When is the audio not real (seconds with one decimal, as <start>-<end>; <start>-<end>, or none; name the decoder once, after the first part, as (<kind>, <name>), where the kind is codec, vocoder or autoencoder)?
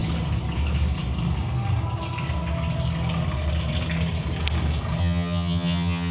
5.0-6.1 (vocoder, HiFi-GAN)